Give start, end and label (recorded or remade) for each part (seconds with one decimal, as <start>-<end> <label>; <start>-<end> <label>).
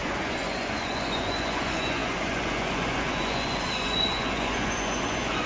0.0-5.5 remade